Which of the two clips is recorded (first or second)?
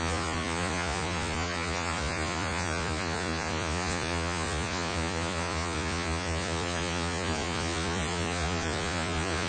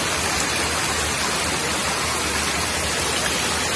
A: second